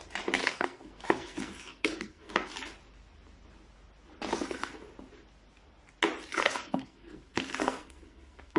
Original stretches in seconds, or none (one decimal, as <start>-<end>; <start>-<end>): 0.0-0.4; 2.5-4.3; 4.8-6.3